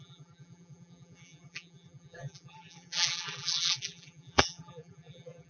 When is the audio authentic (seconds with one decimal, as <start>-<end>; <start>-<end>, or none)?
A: none